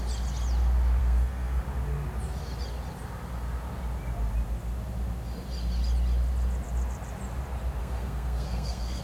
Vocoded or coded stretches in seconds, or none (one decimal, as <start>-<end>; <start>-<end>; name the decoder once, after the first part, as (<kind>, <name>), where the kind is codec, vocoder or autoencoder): 1.0-1.6 (codec, SNAC); 7.8-9.0